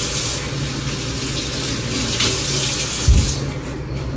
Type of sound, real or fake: real